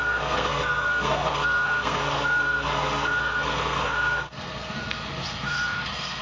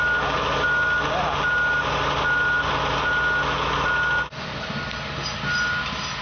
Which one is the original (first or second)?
second